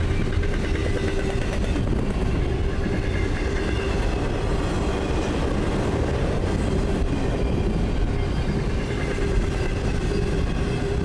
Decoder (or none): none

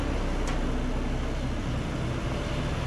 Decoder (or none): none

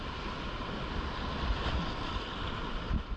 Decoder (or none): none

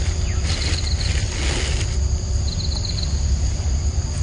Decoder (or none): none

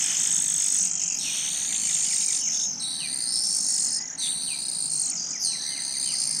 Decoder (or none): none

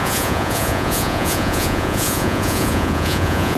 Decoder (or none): vocoder, Vocos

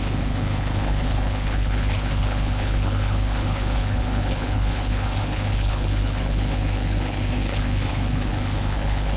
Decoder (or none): codec, HILCodec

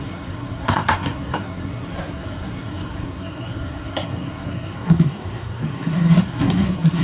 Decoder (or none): codec, SNAC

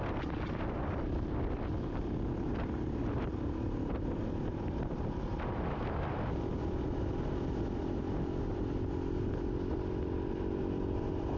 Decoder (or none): vocoder, BigVGAN v2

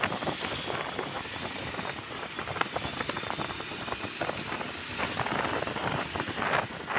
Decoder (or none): none